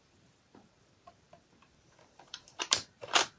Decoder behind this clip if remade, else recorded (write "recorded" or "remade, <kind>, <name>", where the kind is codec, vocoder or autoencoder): remade, vocoder, BigVGAN v2